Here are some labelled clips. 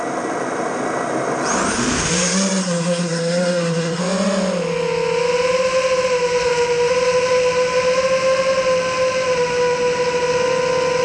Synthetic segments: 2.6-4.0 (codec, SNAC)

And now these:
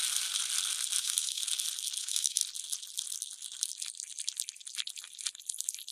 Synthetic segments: 1.0-1.4 (autoencoder, DAC-VAE); 2.0-2.4

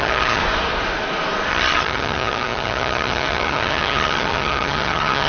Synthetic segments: 0.0-0.4 (vocoder, HiFi-GAN); 1.5-5.3

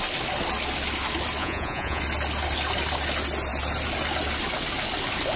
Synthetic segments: 1.4-2.0 (vocoder, Vocos)